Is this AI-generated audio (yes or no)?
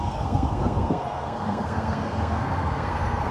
yes